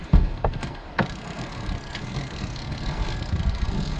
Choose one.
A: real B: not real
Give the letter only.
B